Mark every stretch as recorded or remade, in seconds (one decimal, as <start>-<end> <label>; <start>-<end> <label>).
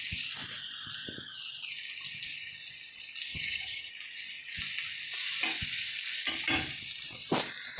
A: 0.0-3.3 recorded; 3.3-3.9 remade; 3.9-7.8 recorded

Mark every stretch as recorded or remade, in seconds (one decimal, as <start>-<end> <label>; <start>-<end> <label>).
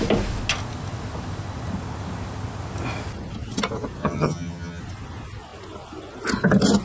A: 0.0-4.0 recorded; 4.0-4.8 remade; 4.8-6.8 recorded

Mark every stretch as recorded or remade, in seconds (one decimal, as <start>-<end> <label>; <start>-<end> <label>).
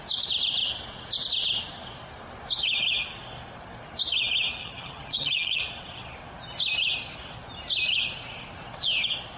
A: 0.0-4.6 recorded; 4.6-5.6 remade; 5.6-9.4 recorded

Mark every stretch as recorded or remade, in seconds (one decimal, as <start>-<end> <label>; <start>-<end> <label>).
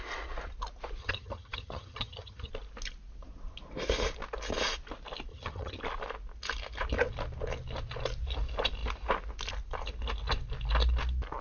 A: 0.0-1.0 recorded; 1.0-2.5 remade; 2.5-5.3 recorded; 5.3-5.8 remade; 5.8-11.4 recorded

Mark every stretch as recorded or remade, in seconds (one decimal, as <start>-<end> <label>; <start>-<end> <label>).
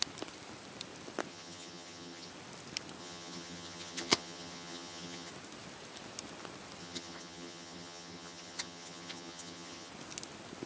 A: 0.0-1.3 recorded; 1.3-2.3 remade; 2.3-3.0 recorded; 3.0-5.3 remade; 5.3-6.8 recorded; 6.8-9.9 remade; 9.9-10.7 recorded